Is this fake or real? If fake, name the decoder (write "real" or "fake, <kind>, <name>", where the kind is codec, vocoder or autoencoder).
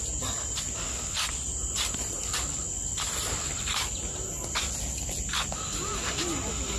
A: real